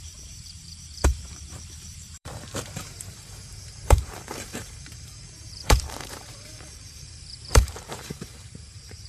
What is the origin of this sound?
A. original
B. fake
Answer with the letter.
B